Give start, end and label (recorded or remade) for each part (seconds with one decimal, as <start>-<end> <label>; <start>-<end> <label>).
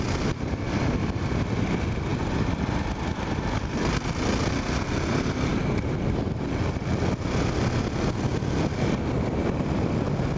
0.0-10.4 recorded